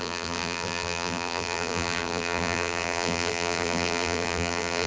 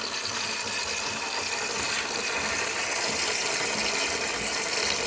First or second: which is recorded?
second